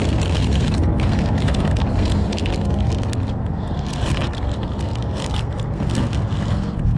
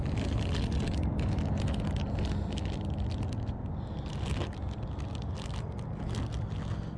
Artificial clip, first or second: first